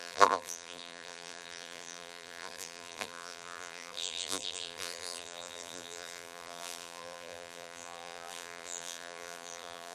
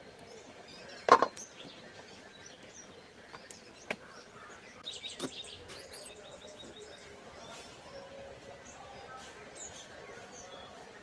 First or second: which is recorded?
second